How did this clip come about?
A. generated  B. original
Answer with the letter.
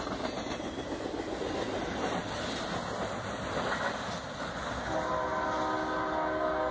B